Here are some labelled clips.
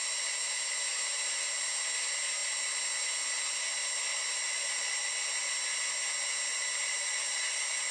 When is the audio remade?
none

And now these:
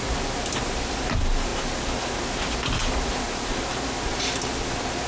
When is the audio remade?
none

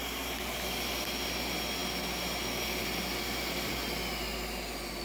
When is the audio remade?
none

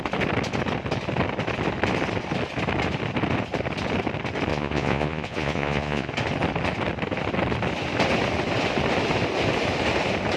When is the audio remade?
4.5-6.1

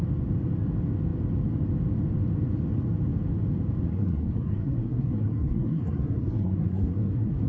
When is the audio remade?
3.9-7.5